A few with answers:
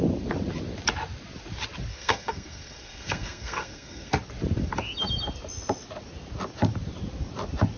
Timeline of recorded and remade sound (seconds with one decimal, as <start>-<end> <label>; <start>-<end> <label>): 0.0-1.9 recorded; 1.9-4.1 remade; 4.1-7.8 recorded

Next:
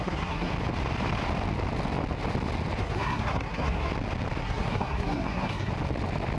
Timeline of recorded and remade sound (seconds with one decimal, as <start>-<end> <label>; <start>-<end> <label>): 0.0-0.5 remade; 0.5-2.8 recorded; 2.8-3.9 remade; 3.9-4.4 recorded; 4.4-5.7 remade; 5.7-6.4 recorded

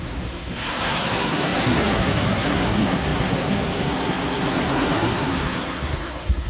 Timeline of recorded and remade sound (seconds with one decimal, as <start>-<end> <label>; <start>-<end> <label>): 0.0-6.5 remade

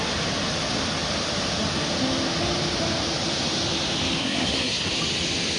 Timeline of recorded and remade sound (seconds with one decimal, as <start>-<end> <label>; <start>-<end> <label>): 0.0-4.2 recorded; 4.2-4.9 remade; 4.9-5.6 recorded

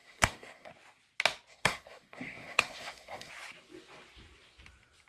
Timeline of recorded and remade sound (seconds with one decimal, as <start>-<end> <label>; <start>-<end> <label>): 0.0-0.7 remade; 0.7-1.5 recorded; 1.5-3.3 remade; 3.3-5.1 recorded

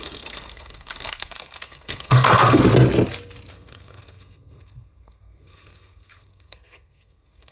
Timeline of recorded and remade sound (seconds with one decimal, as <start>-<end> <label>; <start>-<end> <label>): 0.0-2.6 remade; 2.6-3.5 recorded; 3.5-7.5 remade

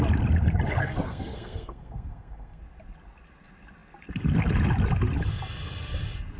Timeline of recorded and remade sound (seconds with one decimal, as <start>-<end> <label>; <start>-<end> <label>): 0.0-0.8 recorded; 0.8-2.6 remade; 2.6-6.4 recorded